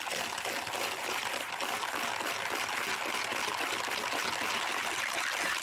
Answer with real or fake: real